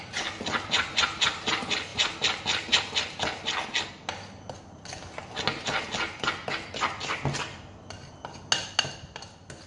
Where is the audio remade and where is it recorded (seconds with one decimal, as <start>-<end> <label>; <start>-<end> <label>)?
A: 0.0-9.7 recorded

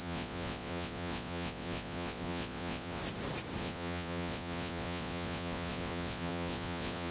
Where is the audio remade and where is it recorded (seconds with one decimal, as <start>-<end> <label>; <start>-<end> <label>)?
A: 0.0-3.0 remade; 3.0-3.6 recorded; 3.6-7.1 remade

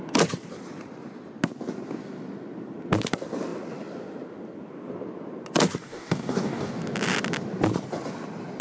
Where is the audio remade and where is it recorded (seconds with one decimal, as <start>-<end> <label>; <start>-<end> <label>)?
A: 0.0-5.8 recorded; 5.8-6.7 remade; 6.7-8.6 recorded

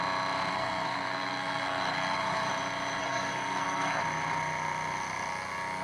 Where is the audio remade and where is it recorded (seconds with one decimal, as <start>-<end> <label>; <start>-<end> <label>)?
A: 0.0-0.5 recorded; 0.5-2.5 remade; 2.5-3.0 recorded; 3.0-4.0 remade; 4.0-5.8 recorded

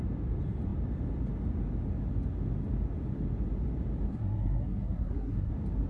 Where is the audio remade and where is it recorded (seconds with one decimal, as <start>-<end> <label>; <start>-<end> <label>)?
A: 0.0-4.1 recorded; 4.1-5.5 remade; 5.5-5.9 recorded

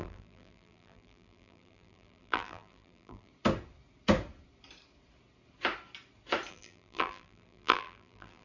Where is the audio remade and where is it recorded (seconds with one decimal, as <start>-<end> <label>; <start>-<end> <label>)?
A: 0.0-3.3 remade; 3.3-6.5 recorded; 6.5-8.4 remade

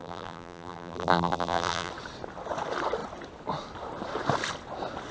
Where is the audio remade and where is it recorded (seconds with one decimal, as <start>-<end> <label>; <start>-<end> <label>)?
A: 0.0-1.9 remade; 1.9-5.1 recorded

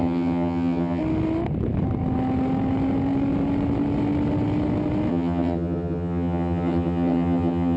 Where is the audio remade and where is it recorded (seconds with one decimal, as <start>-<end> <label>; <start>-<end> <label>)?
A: 0.0-1.0 remade; 1.0-5.1 recorded; 5.1-7.8 remade